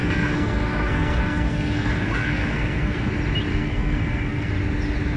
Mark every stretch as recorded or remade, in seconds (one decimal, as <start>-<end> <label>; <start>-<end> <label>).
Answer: 0.0-3.1 remade; 3.1-3.5 recorded; 3.5-4.5 remade; 4.5-5.2 recorded